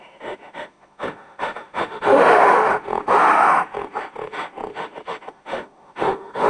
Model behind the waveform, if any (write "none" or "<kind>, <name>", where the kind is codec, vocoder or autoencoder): autoencoder, DAC-VAE